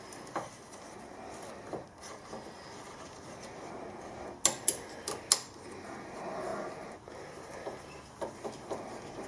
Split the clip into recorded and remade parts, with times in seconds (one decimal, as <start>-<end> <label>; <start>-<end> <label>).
0.0-9.3 recorded